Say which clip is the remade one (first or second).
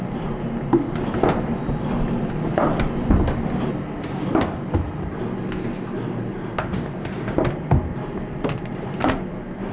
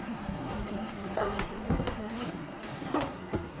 second